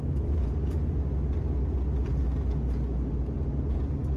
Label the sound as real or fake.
real